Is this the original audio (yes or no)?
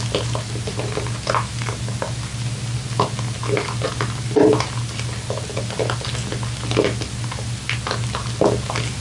yes